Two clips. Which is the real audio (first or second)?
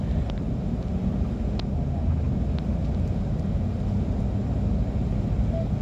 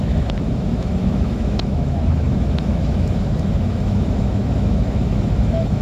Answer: first